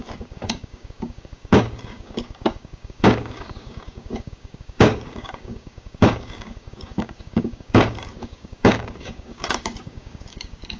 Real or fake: fake